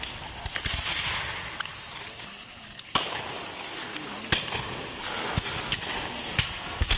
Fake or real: real